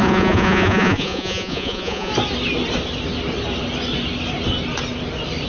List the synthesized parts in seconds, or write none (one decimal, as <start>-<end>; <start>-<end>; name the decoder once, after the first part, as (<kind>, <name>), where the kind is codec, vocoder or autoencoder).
0.0-2.1 (vocoder, Vocos)